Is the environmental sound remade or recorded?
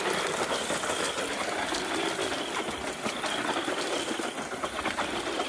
recorded